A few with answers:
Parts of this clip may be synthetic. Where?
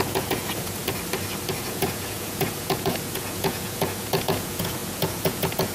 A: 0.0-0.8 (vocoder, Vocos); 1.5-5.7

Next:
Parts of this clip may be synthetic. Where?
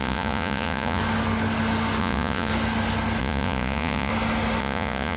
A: 0.0-1.0 (vocoder, Vocos); 2.0-2.5; 3.2-4.1; 4.6-5.2